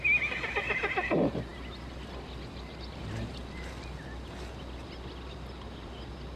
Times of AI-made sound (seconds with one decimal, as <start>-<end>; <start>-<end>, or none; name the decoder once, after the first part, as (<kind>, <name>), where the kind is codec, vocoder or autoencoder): none

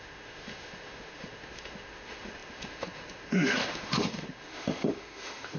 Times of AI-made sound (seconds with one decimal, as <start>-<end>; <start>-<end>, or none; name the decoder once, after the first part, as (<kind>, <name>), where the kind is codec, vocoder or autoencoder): 0.0-5.6 (autoencoder, DAC-VAE)

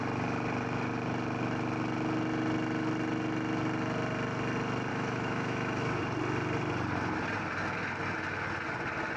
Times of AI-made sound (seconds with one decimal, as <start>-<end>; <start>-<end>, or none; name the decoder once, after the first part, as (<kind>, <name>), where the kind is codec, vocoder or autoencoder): 4.9-6.0 (autoencoder, DAC-VAE)

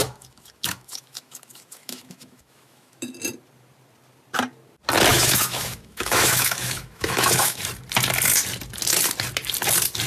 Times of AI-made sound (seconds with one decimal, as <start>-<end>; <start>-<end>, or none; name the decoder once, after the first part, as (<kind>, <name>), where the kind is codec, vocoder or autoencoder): 0.0-3.1 (autoencoder, DAC-VAE); 5.1-7.6